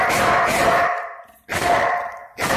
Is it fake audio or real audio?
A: real